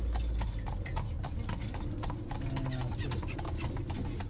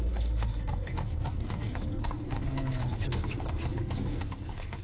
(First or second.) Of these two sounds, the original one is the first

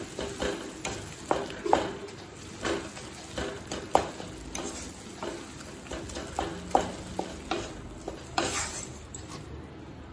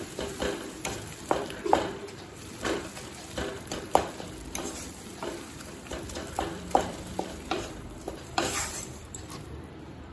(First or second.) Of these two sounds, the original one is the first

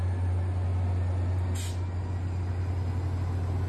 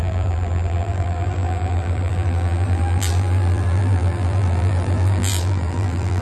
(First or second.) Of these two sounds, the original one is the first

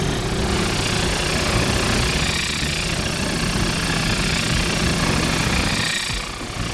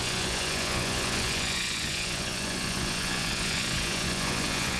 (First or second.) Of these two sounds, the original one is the first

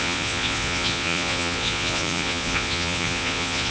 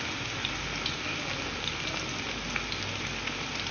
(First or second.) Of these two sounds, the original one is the second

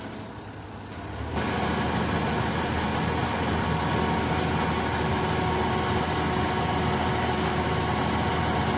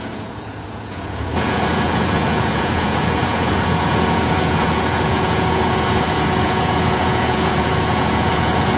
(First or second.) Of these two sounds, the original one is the first